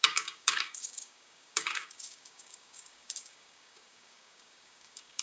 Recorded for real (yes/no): no